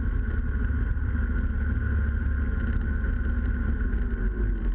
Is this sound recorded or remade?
recorded